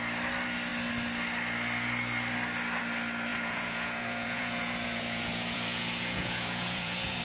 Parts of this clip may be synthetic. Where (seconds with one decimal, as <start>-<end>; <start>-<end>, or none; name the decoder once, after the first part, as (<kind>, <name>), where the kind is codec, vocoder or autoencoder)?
3.3-7.2 (vocoder, Vocos)